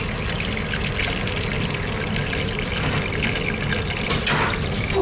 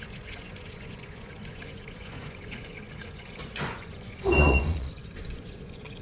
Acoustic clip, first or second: first